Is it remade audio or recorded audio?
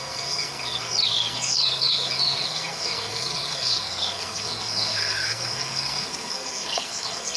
remade